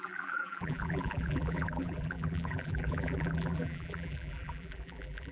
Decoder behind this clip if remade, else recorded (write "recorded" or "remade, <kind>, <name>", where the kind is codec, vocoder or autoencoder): remade, vocoder, BigVGAN v2